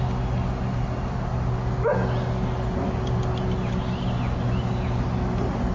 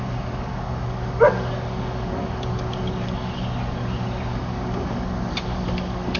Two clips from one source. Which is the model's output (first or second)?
second